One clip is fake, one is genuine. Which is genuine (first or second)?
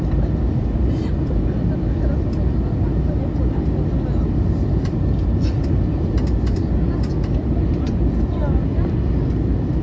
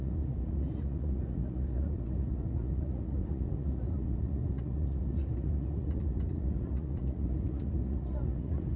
first